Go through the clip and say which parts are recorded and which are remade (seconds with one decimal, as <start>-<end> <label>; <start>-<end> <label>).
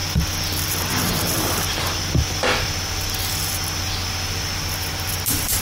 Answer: 0.0-5.6 remade